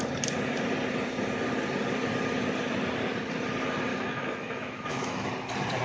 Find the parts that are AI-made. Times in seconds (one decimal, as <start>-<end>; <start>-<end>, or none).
3.9-5.3